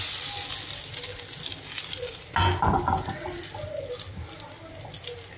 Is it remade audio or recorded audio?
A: recorded